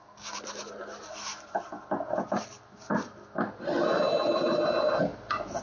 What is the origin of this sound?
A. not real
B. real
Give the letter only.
B